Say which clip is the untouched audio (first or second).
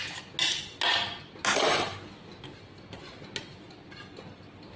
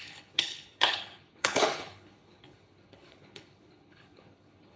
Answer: first